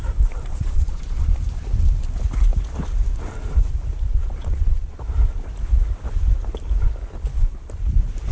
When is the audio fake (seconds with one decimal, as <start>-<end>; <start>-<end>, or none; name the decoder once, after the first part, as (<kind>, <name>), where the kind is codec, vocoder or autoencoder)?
0.5-1.3 (vocoder, Vocos); 4.1-5.0